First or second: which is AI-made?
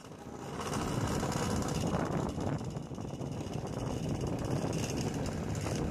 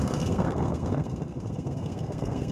second